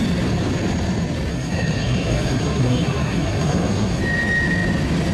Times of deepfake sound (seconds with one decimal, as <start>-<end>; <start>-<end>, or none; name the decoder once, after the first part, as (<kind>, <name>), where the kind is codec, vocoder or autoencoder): 1.3-4.0 (codec, SNAC)

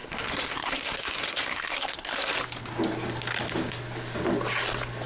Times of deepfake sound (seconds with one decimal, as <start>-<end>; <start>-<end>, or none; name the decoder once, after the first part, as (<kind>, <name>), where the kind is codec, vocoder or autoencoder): 0.0-2.3 (codec, SNAC)

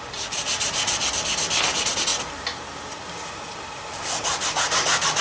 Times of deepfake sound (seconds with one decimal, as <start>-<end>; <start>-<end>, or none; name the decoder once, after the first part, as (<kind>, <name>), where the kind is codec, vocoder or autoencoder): none

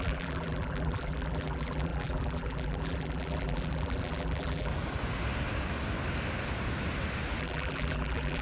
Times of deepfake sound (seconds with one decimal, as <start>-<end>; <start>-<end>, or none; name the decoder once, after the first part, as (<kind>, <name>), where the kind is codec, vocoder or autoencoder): 0.0-4.7 (vocoder, BigVGAN v2); 7.4-8.4

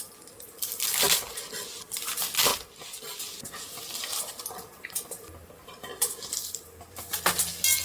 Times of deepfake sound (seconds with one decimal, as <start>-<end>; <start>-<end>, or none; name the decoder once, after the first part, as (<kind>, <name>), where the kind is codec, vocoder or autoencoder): 0.0-2.5 (vocoder, BigVGAN v2); 3.2-7.8